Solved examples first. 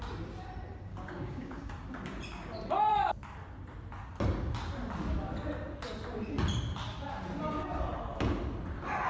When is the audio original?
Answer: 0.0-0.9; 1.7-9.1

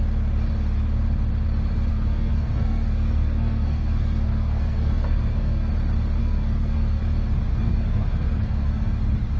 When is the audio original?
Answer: 0.0-1.9; 5.7-6.2; 7.0-7.5; 9.0-9.4

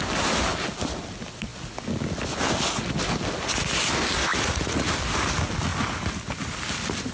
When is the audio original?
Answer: 0.0-4.3; 4.9-7.1

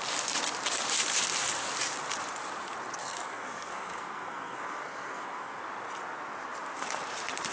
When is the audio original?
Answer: 0.0-3.0; 5.6-7.5

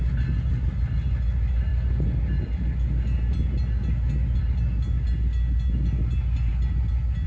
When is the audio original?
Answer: 0.0-7.3

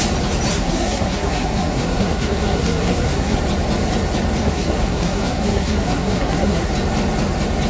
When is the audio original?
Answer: 0.0-0.5; 3.4-4.4; 6.7-7.7

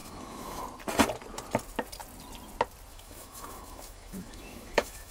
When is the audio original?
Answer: 0.6-2.9

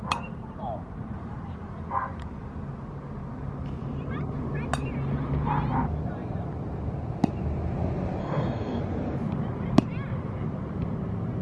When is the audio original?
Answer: 0.0-8.2; 8.8-11.4